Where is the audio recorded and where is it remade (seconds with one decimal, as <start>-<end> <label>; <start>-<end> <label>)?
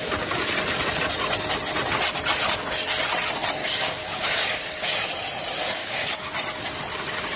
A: 0.0-3.6 recorded; 3.6-4.9 remade; 4.9-5.8 recorded; 5.8-6.3 remade; 6.3-7.4 recorded